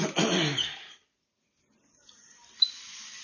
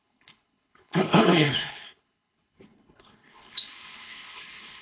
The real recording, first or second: first